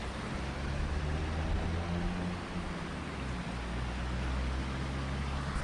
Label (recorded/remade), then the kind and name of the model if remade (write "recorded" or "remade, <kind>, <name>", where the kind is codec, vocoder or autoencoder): recorded